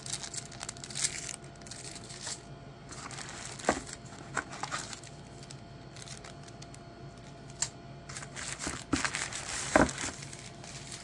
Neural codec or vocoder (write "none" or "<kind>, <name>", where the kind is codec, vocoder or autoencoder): none